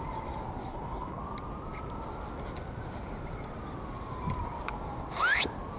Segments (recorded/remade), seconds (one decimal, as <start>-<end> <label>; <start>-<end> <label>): 0.0-0.7 recorded; 0.7-1.2 remade; 1.2-5.8 recorded